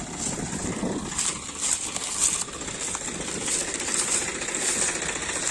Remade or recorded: recorded